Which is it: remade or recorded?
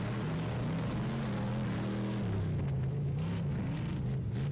recorded